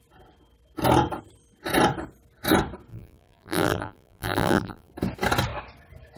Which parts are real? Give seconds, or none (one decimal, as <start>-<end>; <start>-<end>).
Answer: 0.0-2.9; 4.9-6.2